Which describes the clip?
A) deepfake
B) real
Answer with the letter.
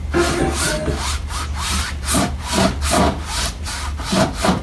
B